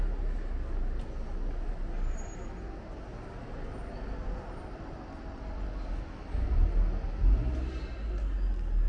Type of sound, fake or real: real